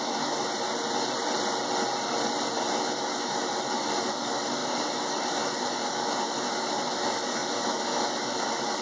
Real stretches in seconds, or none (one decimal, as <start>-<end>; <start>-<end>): 0.5-2.7